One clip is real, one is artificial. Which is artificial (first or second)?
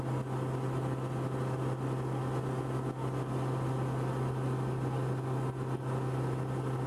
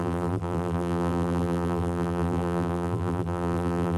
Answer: second